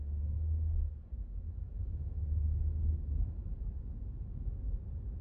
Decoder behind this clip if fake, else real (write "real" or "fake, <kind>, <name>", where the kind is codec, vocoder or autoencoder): real